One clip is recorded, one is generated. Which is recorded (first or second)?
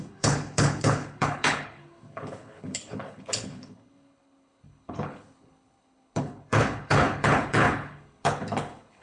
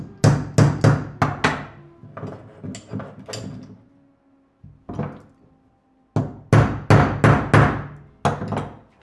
second